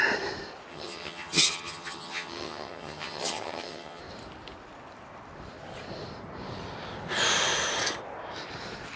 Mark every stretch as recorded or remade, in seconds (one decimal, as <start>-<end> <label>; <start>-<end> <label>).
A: 0.0-0.7 recorded; 0.7-4.0 remade; 4.0-9.0 recorded